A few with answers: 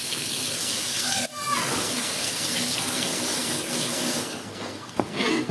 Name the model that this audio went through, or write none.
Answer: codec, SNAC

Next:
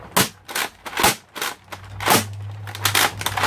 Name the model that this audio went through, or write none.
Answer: none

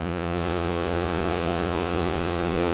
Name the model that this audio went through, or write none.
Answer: vocoder, Vocos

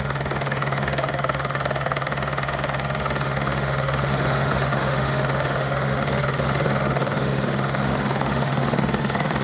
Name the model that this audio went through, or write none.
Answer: autoencoder, DAC-VAE